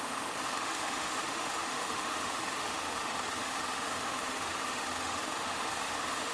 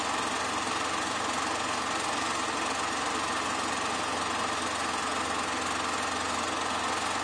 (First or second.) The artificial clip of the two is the first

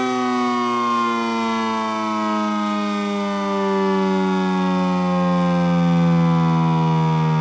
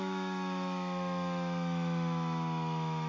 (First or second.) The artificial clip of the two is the second